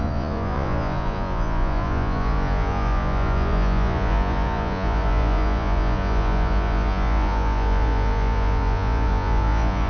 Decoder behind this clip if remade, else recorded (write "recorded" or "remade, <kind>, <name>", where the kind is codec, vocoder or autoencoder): remade, vocoder, Vocos